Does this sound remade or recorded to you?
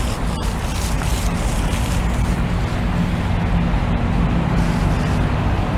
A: recorded